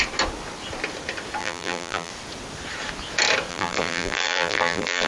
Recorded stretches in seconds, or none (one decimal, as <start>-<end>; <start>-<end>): 0.0-1.4; 2.1-3.5